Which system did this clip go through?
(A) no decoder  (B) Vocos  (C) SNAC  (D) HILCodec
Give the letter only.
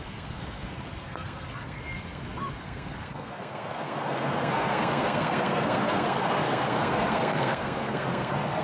C